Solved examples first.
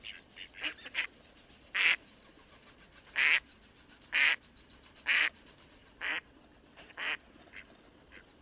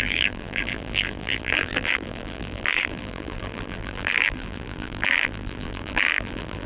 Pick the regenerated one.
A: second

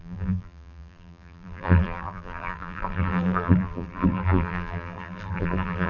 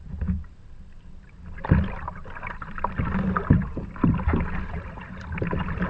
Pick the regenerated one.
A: first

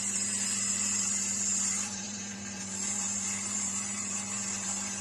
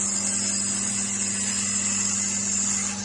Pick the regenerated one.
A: first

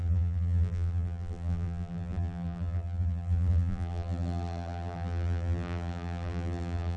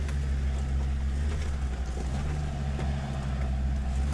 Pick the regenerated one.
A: first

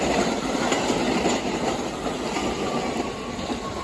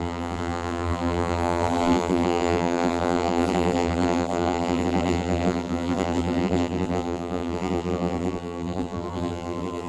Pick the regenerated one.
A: second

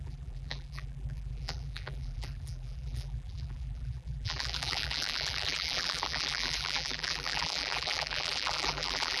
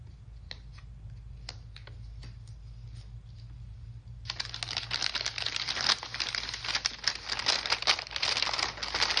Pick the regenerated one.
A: first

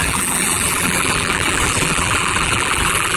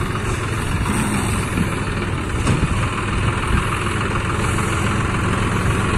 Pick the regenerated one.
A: first